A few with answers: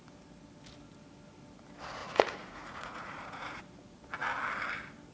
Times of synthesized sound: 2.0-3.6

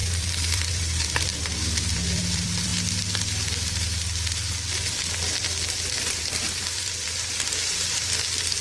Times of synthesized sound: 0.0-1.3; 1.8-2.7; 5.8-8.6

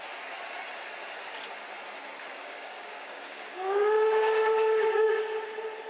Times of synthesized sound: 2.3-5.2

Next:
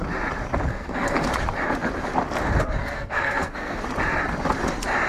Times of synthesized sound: 0.7-1.3; 2.8-3.8